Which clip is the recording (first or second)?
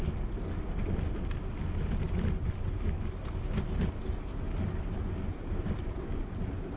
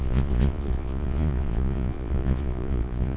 first